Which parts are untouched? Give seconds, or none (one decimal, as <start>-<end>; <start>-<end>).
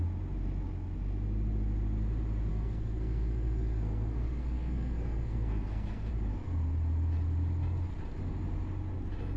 0.0-2.5; 6.1-9.4